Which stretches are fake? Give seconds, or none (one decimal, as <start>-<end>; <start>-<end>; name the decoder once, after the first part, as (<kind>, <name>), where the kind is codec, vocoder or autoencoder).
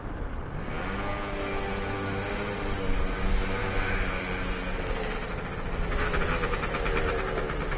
3.6-4.2 (autoencoder, DAC-VAE)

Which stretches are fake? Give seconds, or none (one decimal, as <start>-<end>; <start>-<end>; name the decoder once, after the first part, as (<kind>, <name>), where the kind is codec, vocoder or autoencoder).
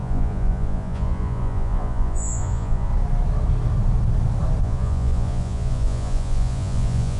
0.0-2.9 (vocoder, Vocos); 4.6-7.2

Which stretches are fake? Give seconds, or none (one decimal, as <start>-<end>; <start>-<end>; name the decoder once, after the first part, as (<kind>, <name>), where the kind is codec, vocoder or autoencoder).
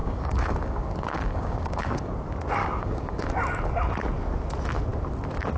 0.0-2.1 (codec, DAC); 2.6-3.3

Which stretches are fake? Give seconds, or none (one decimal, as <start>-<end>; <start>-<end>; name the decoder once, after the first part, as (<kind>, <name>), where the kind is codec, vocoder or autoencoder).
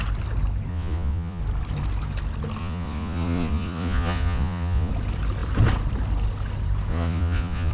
0.7-1.4 (vocoder, Vocos); 2.6-4.9; 6.9-7.7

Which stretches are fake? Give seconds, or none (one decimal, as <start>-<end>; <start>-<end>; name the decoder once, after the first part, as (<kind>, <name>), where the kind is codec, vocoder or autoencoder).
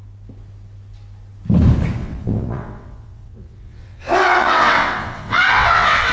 2.0-6.1 (vocoder, WaveNeXt)